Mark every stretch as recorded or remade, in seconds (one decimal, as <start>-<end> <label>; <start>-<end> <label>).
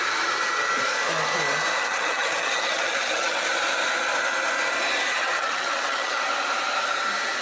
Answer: 0.0-1.7 recorded; 1.7-3.5 remade; 3.5-5.1 recorded; 5.1-6.2 remade; 6.2-7.4 recorded